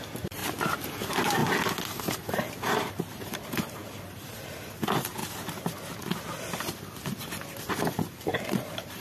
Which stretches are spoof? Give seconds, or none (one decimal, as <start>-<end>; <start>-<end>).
0.0-0.4; 0.9-1.4; 2.0-5.2; 7.6-9.0